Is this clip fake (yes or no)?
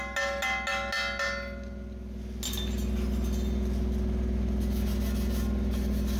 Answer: no